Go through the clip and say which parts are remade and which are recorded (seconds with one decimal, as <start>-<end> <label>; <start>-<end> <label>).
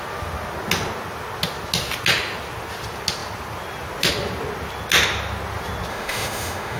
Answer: 0.0-5.9 recorded; 5.9-6.8 remade